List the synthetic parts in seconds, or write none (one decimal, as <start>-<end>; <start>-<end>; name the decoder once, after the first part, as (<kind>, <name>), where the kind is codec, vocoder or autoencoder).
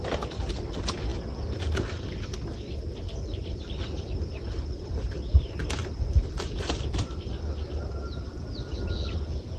none